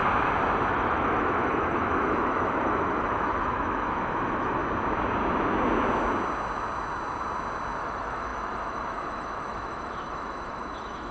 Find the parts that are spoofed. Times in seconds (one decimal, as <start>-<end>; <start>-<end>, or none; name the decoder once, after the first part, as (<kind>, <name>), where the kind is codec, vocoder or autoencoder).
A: 0.7-4.6 (autoencoder, DAC-VAE); 7.8-11.1